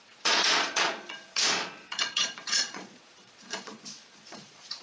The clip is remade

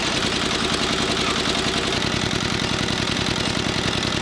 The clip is recorded